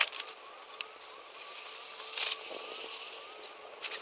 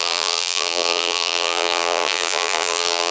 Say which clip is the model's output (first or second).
second